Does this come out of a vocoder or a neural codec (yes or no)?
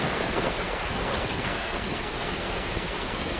yes